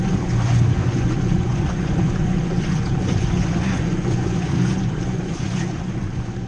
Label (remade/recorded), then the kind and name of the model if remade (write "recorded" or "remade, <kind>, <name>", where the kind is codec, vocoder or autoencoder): remade, vocoder, Vocos